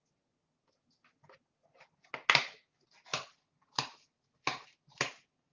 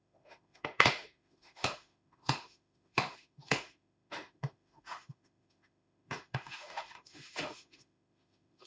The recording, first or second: first